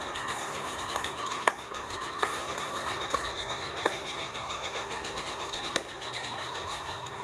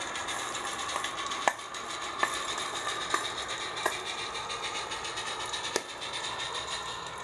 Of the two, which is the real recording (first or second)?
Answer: second